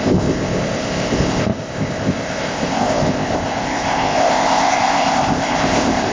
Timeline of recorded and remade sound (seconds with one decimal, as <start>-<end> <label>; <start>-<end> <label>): 0.0-6.1 remade